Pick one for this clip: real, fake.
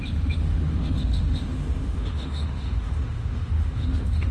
fake